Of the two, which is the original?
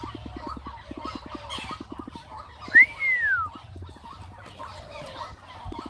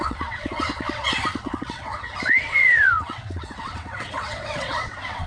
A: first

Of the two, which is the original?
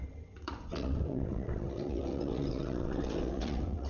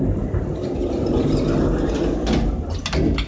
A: second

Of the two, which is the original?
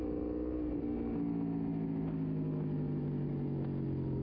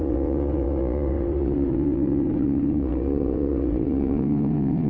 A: first